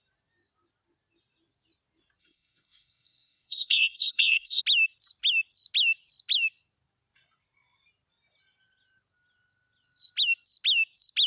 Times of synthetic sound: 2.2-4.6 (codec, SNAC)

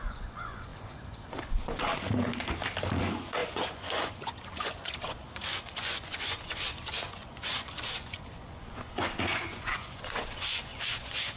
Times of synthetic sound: 0.0-1.9 (vocoder, Vocos); 3.0-11.4

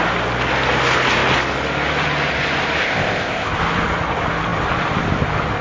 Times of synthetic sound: 2.8-3.5 (codec, ZipCodec)

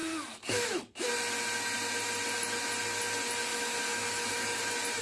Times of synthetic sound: 0.0-0.8 (autoencoder, DAC-VAE); 3.5-4.6

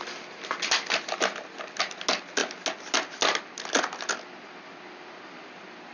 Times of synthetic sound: none

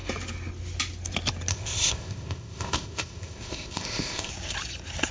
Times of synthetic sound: 1.5-4.3 (codec, ZipCodec)